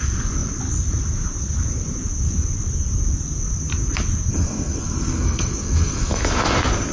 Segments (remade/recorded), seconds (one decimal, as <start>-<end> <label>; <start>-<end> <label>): 0.0-4.3 recorded; 4.3-6.2 remade; 6.2-6.9 recorded